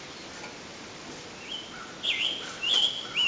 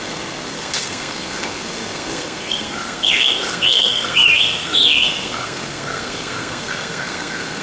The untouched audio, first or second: first